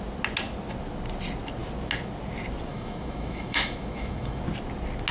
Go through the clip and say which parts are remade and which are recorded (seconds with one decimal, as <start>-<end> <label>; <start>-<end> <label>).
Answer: 0.0-2.7 recorded; 2.7-4.4 remade; 4.4-5.1 recorded